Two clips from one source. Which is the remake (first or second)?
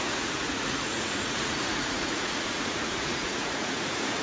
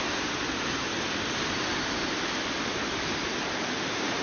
first